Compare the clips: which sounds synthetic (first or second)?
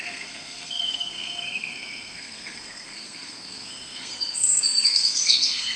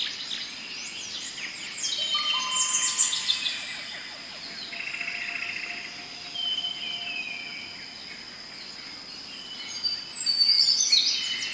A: first